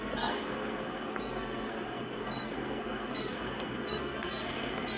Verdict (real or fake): fake